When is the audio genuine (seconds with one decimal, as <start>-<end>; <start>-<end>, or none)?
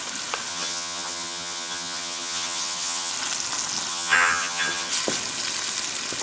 0.0-0.5; 3.1-3.9; 4.9-6.2